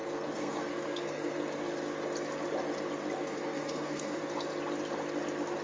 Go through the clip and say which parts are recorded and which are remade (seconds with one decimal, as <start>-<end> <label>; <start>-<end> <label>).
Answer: 0.0-1.4 remade; 1.4-3.2 recorded; 3.2-4.2 remade; 4.2-5.6 recorded